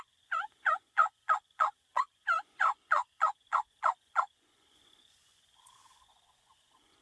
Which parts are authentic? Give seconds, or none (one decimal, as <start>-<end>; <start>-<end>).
none